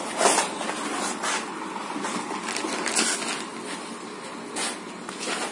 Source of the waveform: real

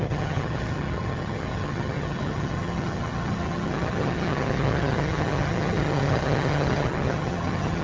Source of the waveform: fake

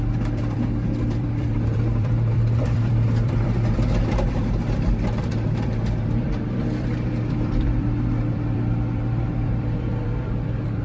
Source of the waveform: fake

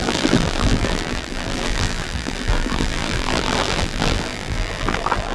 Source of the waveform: fake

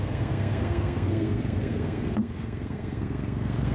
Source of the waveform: fake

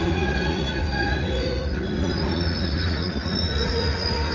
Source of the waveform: fake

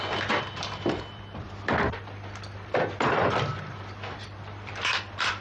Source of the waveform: fake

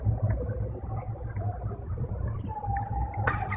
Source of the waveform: fake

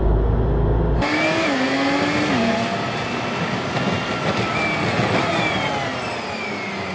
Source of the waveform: real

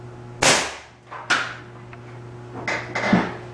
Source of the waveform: real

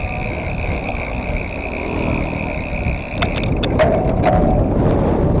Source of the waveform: real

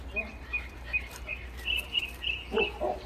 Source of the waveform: real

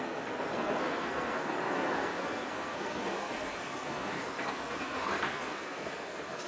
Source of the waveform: fake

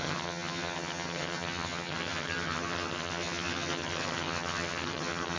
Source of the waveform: fake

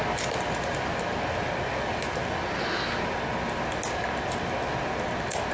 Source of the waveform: real